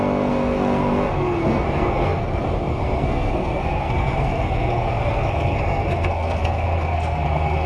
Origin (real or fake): fake